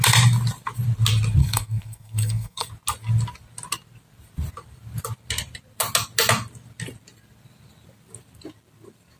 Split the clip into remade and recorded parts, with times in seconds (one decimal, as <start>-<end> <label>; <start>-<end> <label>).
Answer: 0.0-1.4 recorded; 1.4-2.7 remade; 2.7-9.2 recorded